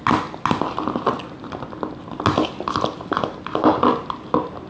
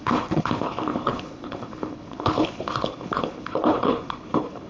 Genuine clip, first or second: first